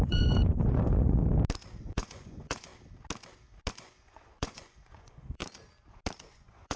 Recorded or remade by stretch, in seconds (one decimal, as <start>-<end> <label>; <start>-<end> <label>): 0.0-1.2 remade; 1.2-1.8 recorded; 1.8-2.7 remade; 2.7-3.7 recorded; 3.7-5.4 remade; 5.4-6.3 recorded; 6.3-6.8 remade